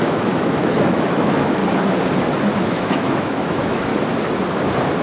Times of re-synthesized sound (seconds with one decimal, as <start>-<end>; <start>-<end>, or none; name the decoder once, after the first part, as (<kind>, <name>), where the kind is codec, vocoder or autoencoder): 0.0-1.6 (autoencoder, DAC-VAE); 2.6-3.9